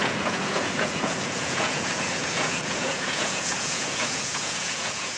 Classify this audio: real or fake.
fake